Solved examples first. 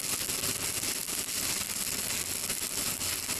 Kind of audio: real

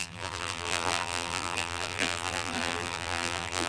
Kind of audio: fake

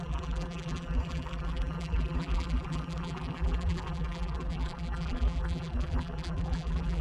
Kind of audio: fake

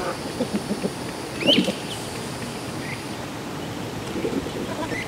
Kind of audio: real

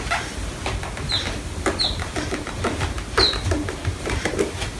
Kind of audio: real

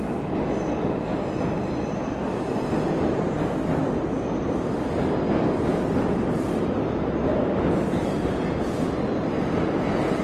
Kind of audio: real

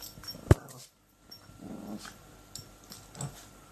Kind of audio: real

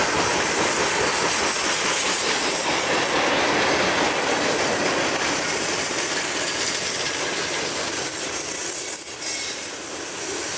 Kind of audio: real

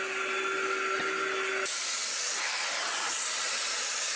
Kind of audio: real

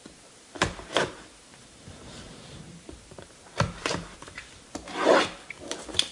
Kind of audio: fake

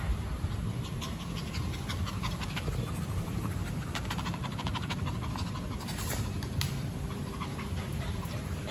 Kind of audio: fake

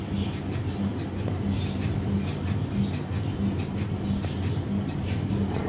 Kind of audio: real